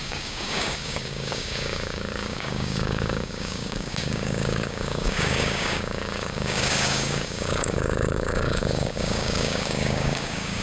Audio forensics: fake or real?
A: fake